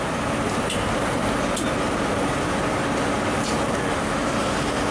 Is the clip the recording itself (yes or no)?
yes